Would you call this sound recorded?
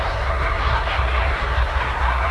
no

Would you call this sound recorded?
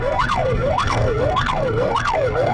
no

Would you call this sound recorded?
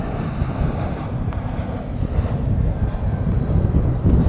yes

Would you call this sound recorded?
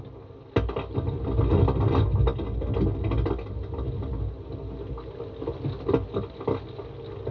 yes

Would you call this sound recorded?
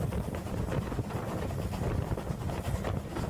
yes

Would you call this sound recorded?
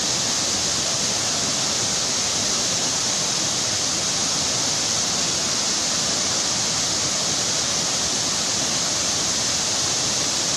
yes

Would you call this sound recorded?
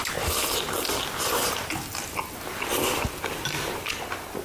yes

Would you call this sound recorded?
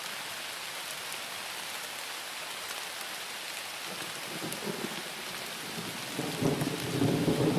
yes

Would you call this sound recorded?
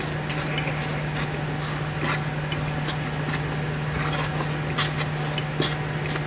yes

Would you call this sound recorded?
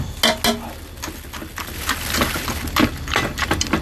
yes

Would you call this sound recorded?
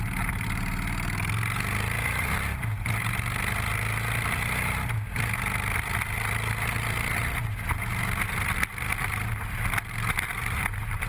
yes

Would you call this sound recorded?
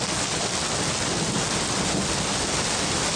yes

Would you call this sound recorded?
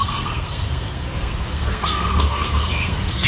no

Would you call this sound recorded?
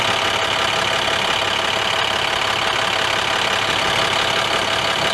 yes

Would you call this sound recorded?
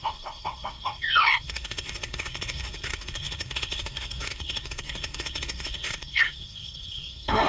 no